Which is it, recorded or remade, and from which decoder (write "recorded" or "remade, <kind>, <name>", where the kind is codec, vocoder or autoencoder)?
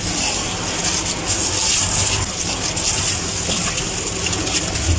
recorded